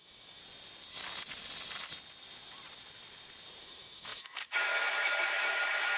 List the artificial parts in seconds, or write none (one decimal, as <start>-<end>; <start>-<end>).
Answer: 0.0-0.4; 3.6-6.0